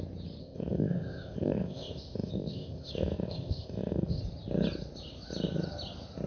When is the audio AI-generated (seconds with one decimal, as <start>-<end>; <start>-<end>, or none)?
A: 0.4-4.2